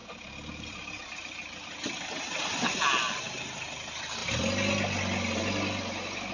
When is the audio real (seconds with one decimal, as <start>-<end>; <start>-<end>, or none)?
0.0-6.3